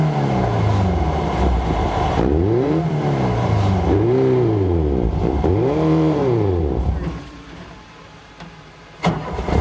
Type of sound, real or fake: fake